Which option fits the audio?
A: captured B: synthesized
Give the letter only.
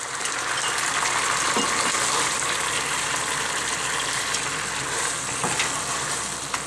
A